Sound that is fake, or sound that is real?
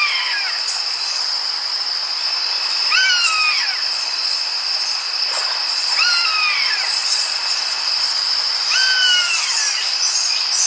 real